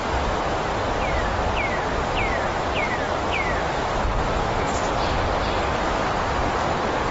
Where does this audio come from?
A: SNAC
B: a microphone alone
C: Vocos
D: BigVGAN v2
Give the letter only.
B